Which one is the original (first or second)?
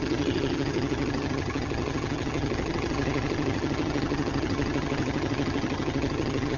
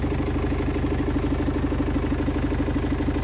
second